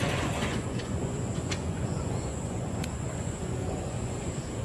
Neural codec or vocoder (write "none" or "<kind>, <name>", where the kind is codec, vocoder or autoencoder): vocoder, Vocos